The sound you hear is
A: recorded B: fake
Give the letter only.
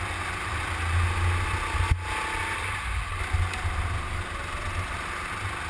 A